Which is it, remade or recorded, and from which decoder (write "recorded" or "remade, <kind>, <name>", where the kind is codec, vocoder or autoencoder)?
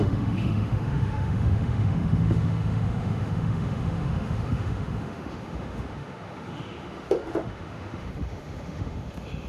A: remade, autoencoder, DAC-VAE